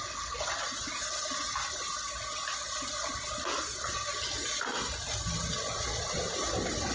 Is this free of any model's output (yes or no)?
yes